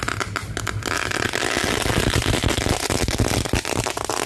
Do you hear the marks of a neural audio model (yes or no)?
no